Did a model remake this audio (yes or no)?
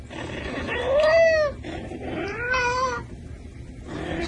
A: no